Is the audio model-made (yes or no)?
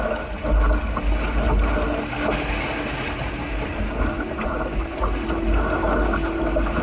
no